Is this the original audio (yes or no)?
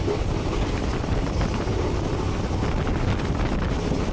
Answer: yes